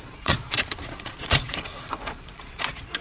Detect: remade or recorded remade